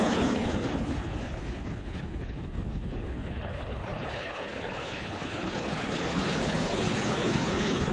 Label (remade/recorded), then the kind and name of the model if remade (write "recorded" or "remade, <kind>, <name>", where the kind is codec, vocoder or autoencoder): remade, codec, HILCodec